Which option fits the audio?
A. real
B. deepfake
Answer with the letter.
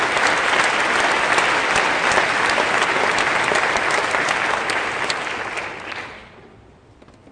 A